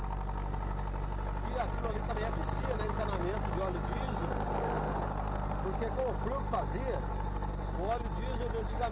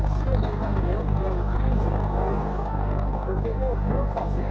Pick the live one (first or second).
first